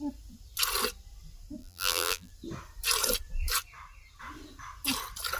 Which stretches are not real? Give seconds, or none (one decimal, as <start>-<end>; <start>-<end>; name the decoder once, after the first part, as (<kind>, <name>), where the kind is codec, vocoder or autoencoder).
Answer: 1.6-2.3 (vocoder, BigVGAN v2)